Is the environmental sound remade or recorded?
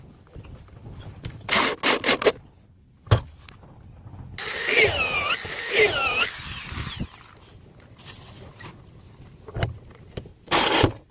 recorded